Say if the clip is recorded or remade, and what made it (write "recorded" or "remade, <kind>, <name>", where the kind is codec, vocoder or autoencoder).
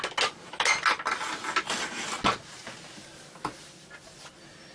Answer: recorded